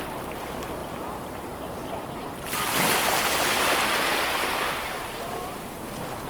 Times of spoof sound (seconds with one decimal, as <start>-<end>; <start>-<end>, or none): 0.8-3.2